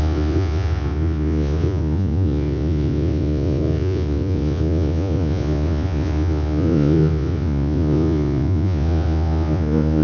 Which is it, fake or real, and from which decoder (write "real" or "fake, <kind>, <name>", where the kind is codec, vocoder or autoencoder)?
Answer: fake, vocoder, Vocos